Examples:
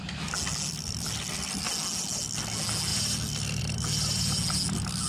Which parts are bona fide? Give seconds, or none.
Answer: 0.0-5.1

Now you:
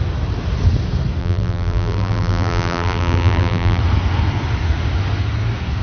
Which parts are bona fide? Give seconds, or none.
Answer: 0.0-1.2; 3.8-5.8